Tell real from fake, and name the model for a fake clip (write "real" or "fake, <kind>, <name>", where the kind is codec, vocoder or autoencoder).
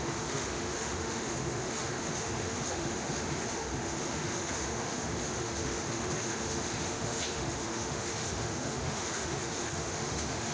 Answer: fake, autoencoder, DAC-VAE